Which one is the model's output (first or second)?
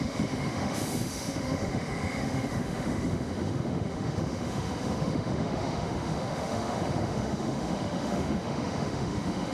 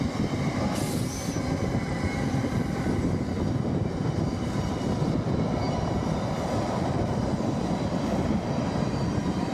first